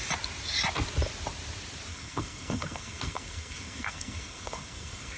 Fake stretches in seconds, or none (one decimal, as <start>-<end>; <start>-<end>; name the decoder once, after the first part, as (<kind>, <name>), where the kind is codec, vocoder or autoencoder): 1.9-5.2 (codec, SNAC)